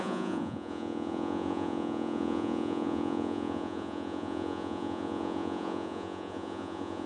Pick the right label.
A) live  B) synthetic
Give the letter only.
B